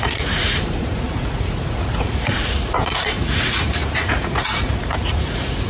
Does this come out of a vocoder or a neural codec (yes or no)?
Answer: yes